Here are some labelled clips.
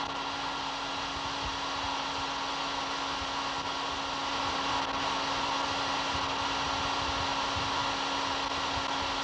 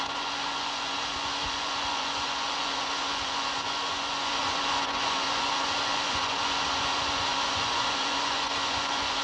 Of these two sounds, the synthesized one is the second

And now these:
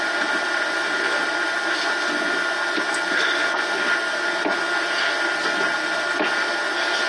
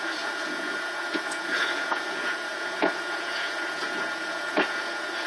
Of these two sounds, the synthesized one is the second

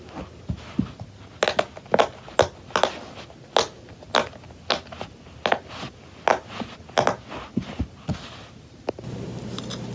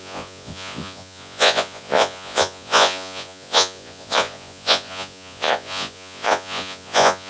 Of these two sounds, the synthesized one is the second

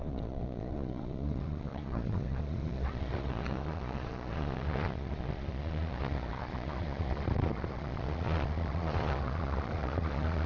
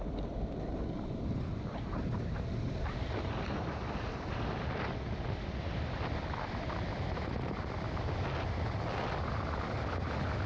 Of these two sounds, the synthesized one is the first